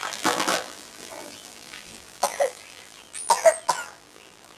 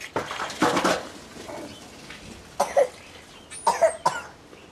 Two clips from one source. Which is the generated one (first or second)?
first